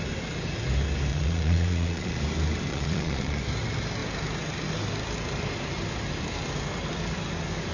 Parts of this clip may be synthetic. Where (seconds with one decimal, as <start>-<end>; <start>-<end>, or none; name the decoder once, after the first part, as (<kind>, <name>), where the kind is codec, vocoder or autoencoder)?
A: 1.1-2.2 (vocoder, Vocos); 2.7-3.4